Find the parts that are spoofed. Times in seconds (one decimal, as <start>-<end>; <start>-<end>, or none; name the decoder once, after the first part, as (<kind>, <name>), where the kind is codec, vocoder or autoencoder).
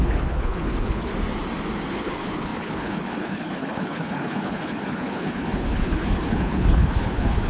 0.0-1.1 (codec, HILCodec); 1.9-7.5